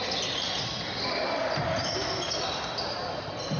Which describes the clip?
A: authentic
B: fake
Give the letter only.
A